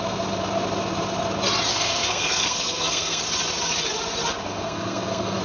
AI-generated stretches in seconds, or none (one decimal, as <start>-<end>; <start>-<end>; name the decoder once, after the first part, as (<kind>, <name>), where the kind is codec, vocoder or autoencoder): 1.7-3.2 (codec, SNAC); 4.4-5.4